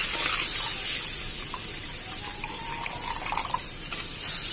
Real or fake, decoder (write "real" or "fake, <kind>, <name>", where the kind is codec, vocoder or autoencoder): real